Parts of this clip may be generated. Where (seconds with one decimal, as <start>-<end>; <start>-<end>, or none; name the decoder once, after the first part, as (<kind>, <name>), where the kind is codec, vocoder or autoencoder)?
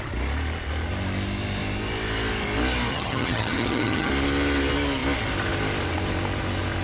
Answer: 2.9-4.1 (vocoder, HiFi-GAN)